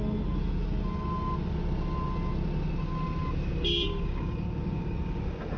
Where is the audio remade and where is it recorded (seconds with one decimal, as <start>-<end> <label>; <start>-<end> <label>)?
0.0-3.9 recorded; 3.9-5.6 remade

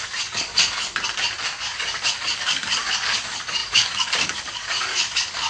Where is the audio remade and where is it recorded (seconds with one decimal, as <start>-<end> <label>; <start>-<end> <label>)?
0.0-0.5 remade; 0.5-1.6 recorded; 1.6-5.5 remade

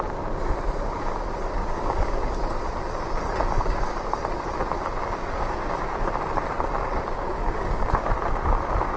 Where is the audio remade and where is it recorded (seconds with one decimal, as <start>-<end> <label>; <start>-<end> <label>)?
0.0-1.6 recorded; 1.6-2.3 remade; 2.3-5.2 recorded; 5.2-5.8 remade; 5.8-6.8 recorded; 6.8-8.1 remade; 8.1-9.0 recorded

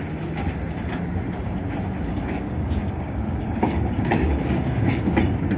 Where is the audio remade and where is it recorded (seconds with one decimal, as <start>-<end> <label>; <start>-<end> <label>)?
0.0-2.1 recorded; 2.1-5.0 remade; 5.0-5.6 recorded

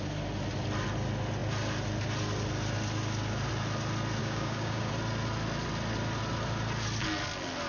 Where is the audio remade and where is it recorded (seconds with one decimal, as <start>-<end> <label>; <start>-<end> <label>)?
0.0-4.2 recorded; 4.2-4.9 remade; 4.9-7.7 recorded